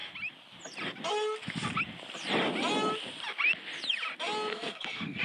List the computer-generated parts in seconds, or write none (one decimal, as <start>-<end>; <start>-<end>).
4.5-5.2